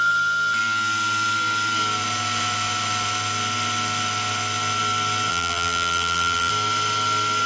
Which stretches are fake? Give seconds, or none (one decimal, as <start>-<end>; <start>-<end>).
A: 5.3-6.5